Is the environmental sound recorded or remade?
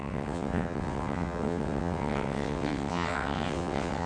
remade